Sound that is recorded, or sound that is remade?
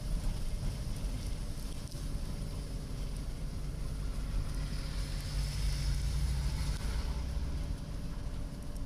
recorded